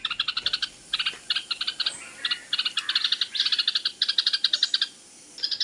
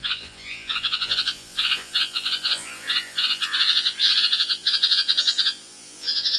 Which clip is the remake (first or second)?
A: second